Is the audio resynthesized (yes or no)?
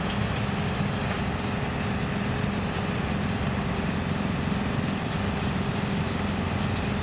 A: no